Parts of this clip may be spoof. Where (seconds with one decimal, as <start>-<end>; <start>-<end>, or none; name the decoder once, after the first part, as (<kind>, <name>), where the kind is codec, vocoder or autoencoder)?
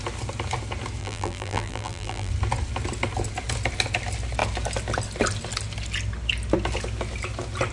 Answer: 1.0-2.3 (vocoder, BigVGAN v2)